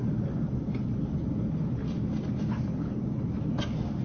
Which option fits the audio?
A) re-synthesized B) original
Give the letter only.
B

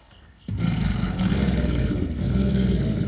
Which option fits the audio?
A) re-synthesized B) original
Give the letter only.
A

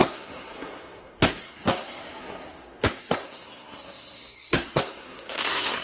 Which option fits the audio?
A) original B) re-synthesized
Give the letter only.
B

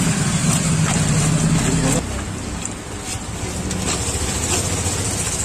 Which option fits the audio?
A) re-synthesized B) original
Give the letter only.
B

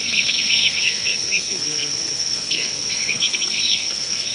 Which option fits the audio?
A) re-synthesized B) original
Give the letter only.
A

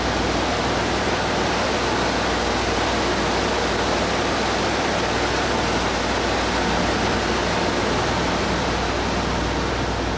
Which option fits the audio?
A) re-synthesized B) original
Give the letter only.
B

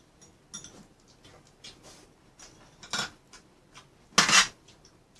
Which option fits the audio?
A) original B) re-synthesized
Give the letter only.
A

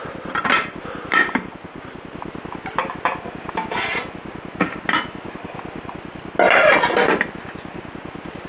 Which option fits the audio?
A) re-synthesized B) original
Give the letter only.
B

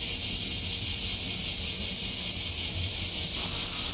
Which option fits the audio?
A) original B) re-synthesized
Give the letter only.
A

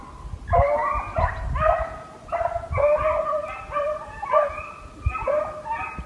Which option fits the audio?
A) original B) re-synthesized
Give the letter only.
A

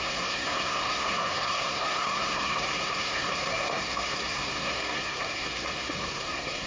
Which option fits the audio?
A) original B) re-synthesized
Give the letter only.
B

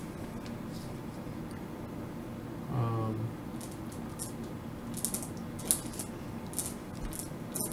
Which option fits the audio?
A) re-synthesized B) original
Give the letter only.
B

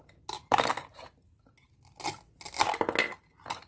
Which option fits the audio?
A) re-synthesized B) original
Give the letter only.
B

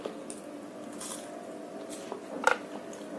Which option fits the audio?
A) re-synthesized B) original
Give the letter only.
B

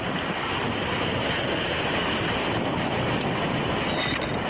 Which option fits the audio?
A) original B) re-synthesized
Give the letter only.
A